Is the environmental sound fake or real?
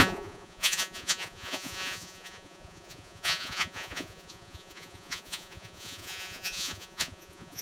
fake